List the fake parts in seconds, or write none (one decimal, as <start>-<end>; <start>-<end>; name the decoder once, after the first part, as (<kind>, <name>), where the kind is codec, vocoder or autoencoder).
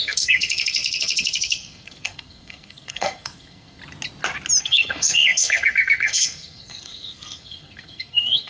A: 0.0-3.8 (codec, SNAC); 4.6-8.5